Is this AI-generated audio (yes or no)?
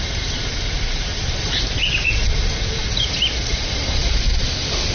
no